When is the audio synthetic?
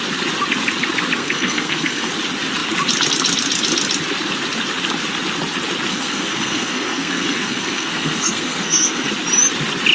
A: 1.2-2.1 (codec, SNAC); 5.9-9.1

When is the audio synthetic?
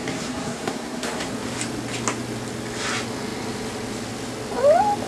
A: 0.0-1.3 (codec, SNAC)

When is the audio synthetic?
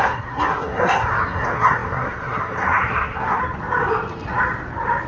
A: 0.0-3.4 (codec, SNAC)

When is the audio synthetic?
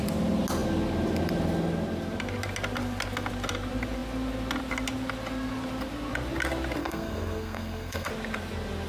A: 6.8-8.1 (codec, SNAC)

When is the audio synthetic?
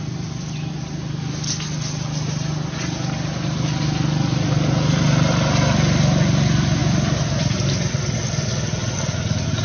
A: none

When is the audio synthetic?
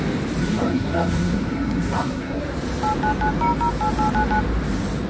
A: 0.4-2.4 (codec, SNAC)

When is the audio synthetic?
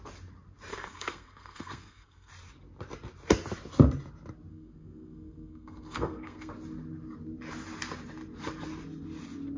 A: 0.7-2.3 (codec, SNAC); 4.5-6.5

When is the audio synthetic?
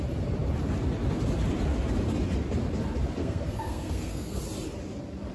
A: 3.2-4.4 (codec, SNAC)